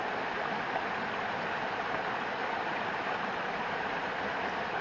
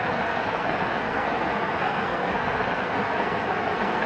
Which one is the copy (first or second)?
second